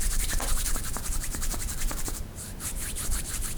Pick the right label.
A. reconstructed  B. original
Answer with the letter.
A